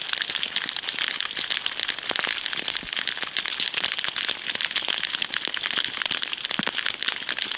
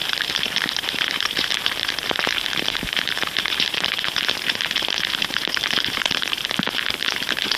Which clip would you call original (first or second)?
first